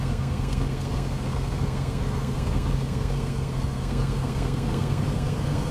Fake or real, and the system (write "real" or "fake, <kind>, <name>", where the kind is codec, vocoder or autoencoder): fake, codec, SNAC